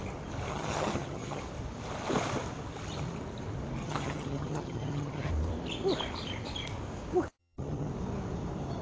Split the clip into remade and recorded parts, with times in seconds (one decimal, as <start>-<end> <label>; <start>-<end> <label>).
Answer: 0.0-0.5 recorded; 0.5-1.4 remade; 1.4-3.8 recorded; 3.8-5.3 remade; 5.3-7.4 recorded; 7.4-7.9 remade; 7.9-8.8 recorded

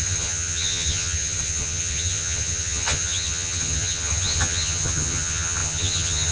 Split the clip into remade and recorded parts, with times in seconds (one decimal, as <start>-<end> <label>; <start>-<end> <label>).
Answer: 0.0-6.3 remade

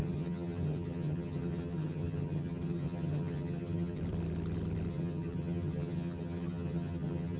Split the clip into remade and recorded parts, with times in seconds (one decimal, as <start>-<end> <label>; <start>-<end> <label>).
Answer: 0.0-4.0 remade; 4.0-4.9 recorded; 4.9-7.4 remade

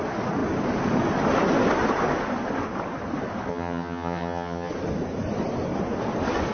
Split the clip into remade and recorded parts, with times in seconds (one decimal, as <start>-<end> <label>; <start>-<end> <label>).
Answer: 0.0-3.5 recorded; 3.5-4.7 remade; 4.7-6.5 recorded

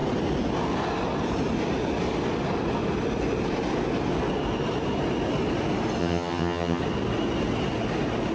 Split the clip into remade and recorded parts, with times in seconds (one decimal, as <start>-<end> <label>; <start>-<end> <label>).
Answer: 0.0-6.0 recorded; 6.0-6.8 remade; 6.8-8.3 recorded

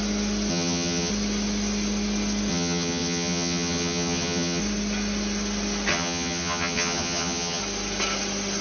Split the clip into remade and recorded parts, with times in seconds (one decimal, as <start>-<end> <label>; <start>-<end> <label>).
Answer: 0.0-0.5 recorded; 0.5-1.1 remade; 1.1-2.5 recorded; 2.5-4.6 remade; 4.6-5.9 recorded; 5.9-7.6 remade; 7.6-8.6 recorded

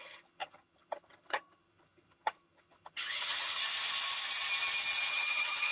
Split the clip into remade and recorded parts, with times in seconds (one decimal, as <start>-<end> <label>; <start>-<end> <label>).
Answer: 0.0-3.6 remade; 3.6-5.1 recorded; 5.1-5.7 remade

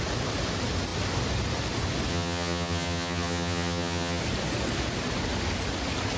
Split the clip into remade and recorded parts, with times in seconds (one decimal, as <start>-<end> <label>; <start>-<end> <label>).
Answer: 0.0-2.1 recorded; 2.1-4.2 remade; 4.2-6.2 recorded